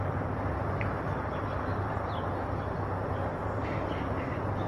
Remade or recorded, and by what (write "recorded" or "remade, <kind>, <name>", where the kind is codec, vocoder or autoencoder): remade, vocoder, BigVGAN v2